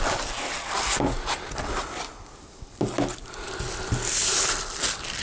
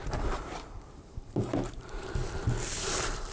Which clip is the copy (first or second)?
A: second